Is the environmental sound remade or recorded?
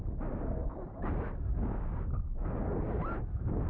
recorded